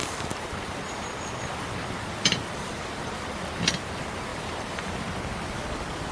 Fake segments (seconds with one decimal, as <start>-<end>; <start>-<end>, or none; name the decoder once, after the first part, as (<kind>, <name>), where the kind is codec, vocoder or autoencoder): 0.0-3.7 (vocoder, BigVGAN v2); 4.3-5.0